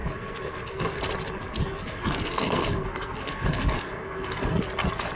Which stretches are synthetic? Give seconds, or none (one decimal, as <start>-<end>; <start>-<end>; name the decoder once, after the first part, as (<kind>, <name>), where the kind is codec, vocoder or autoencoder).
0.0-1.0 (codec, SNAC); 1.6-4.6

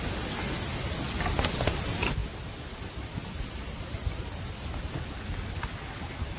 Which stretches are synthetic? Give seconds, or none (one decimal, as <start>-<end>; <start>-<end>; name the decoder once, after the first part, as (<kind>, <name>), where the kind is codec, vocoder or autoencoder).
none

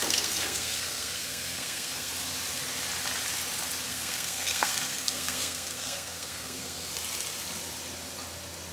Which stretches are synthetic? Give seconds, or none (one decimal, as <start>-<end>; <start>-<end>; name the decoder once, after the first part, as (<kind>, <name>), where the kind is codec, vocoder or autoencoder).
0.0-2.1 (codec, SNAC); 3.9-6.9

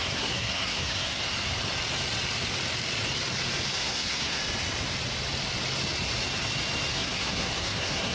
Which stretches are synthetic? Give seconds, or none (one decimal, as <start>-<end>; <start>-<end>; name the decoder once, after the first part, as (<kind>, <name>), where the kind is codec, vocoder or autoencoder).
0.0-1.2 (codec, SNAC); 3.7-4.4; 6.9-8.1

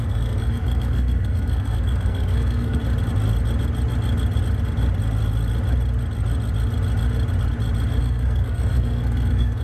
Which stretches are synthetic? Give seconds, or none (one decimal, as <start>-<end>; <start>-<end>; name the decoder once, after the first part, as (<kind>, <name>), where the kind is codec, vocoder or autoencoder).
0.0-2.8 (codec, SNAC); 8.0-9.6

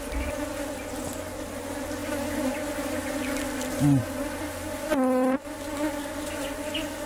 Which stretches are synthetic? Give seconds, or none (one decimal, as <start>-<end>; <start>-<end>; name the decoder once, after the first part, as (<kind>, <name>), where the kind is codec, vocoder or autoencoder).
none

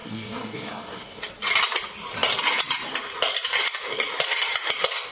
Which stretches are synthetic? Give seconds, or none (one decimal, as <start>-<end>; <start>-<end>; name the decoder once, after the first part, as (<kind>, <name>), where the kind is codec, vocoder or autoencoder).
0.0-1.2 (codec, SNAC)

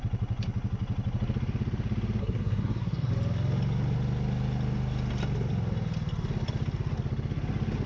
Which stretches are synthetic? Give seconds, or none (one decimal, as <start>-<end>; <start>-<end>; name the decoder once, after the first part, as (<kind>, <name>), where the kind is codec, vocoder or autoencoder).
2.2-3.1 (codec, SNAC)